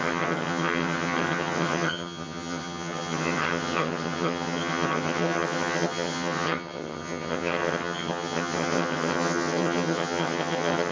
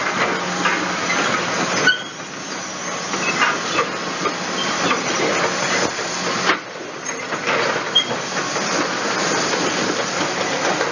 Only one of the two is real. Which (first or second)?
second